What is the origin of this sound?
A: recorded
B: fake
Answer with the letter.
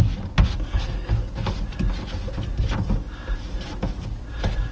A